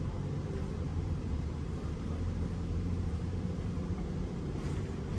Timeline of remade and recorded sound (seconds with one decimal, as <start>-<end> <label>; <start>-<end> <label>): 0.0-0.9 recorded; 0.9-4.0 remade; 4.0-5.2 recorded